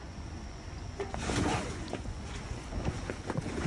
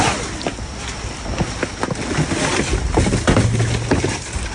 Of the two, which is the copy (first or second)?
first